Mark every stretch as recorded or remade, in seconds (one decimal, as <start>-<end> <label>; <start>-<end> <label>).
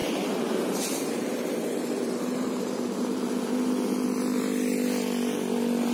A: 0.0-3.5 remade; 3.5-5.9 recorded